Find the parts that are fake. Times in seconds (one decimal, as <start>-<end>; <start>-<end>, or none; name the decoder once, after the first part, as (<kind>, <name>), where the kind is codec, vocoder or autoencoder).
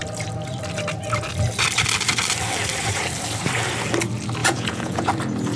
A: 4.4-5.1 (vocoder, Vocos)